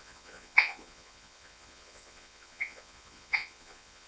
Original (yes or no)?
no